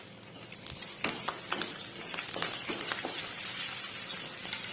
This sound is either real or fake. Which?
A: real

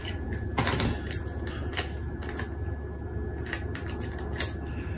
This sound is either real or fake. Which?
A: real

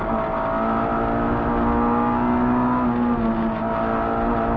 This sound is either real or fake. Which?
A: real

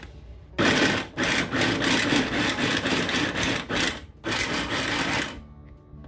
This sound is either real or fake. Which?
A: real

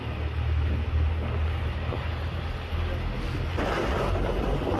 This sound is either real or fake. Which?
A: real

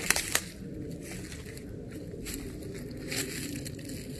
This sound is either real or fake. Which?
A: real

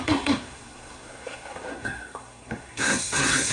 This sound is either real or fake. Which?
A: fake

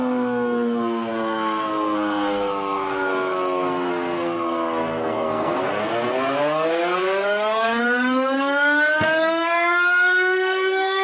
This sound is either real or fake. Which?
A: fake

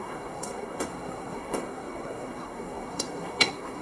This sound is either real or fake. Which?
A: fake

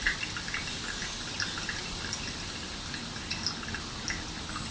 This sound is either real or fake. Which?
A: real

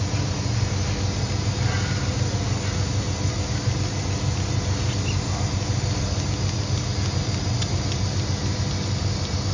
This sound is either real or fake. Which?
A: real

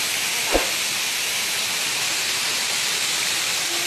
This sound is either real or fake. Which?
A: real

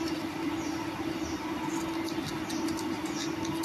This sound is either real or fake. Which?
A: real